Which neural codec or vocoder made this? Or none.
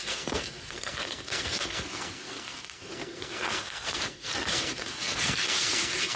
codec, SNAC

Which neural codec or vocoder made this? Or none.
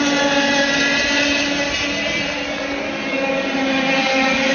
none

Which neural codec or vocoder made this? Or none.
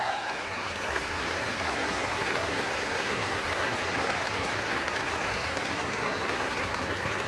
codec, SNAC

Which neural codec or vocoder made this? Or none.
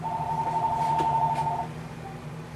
none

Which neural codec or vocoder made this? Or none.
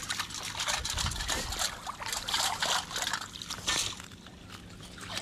none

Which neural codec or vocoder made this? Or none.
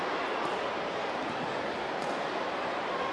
none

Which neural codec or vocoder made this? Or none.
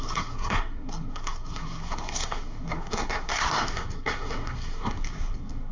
codec, SNAC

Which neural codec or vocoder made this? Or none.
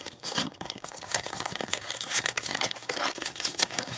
codec, SNAC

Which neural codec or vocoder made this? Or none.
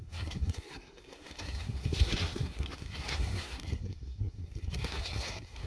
codec, SNAC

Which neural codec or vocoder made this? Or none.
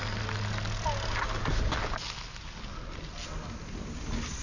none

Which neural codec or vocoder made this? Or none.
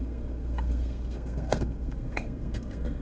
codec, SNAC